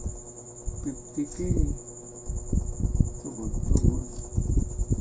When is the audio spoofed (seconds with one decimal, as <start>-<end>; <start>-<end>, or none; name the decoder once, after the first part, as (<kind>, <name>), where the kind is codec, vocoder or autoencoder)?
1.3-4.3 (autoencoder, DAC-VAE)